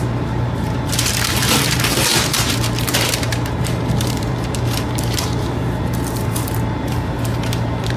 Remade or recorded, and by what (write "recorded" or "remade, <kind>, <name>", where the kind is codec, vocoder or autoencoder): remade, vocoder, BigVGAN v2